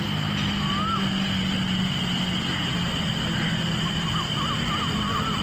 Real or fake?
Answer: real